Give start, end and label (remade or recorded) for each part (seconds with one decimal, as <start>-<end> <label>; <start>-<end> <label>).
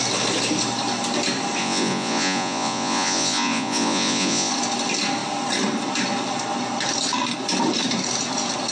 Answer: 0.0-1.6 recorded; 1.6-4.5 remade; 4.5-8.7 recorded